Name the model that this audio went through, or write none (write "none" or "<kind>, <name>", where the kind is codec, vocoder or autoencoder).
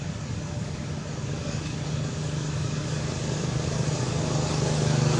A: codec, DAC